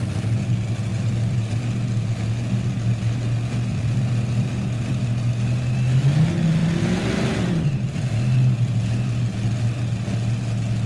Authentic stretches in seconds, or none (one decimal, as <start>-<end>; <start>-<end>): 0.0-0.9; 1.6-3.7; 5.0-10.9